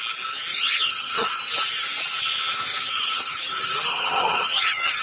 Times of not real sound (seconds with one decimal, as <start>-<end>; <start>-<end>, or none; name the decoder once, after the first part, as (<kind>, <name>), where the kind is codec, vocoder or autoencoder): 0.5-1.4 (vocoder, HiFi-GAN); 2.7-3.5; 3.9-5.0